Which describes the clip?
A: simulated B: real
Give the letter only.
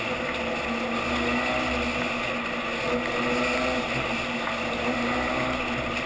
B